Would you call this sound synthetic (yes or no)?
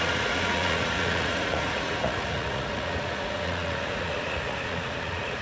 yes